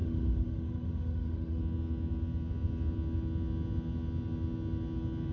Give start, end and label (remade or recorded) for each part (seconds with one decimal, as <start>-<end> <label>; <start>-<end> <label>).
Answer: 0.0-1.6 remade; 1.6-5.3 recorded